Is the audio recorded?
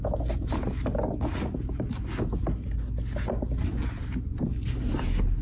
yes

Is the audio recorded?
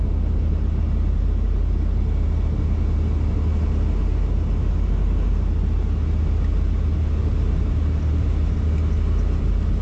yes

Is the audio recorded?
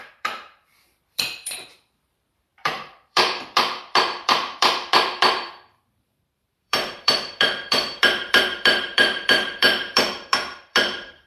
no